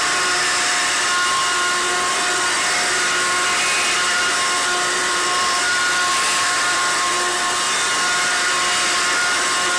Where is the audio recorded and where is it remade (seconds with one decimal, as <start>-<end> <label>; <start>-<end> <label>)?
0.0-5.0 recorded; 5.0-5.8 remade; 5.8-9.8 recorded